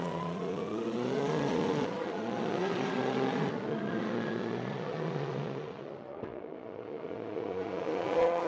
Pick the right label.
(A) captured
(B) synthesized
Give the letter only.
B